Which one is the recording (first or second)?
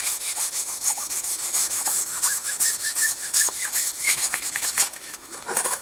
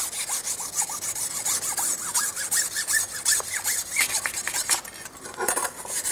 second